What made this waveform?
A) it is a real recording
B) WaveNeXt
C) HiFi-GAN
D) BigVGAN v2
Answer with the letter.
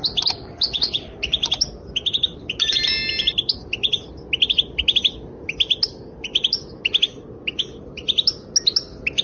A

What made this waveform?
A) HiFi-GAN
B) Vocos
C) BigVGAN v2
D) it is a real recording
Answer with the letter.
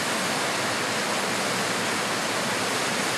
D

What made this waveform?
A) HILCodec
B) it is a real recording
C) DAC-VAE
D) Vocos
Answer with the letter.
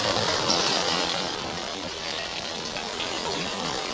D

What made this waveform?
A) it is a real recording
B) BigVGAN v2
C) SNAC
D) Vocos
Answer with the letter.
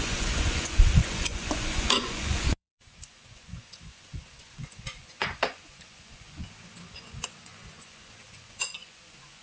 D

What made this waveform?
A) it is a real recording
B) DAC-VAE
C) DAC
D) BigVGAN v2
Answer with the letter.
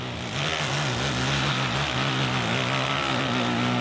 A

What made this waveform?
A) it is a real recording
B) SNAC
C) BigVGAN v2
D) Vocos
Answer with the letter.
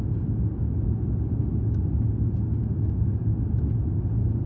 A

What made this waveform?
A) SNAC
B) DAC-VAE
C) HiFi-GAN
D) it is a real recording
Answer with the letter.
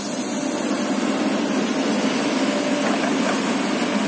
D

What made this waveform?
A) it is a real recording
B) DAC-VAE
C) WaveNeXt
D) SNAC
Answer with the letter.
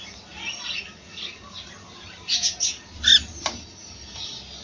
A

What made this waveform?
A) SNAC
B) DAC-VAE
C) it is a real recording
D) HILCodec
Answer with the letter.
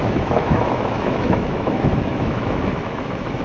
B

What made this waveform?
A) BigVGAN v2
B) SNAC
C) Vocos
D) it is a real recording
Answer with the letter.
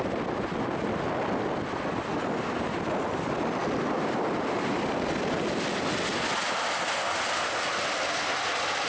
D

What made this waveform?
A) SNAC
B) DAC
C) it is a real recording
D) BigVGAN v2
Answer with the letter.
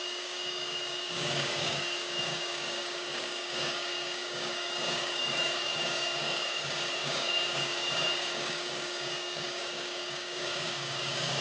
B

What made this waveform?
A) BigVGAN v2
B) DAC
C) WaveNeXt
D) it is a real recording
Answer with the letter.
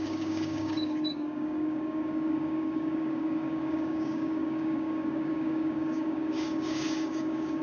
B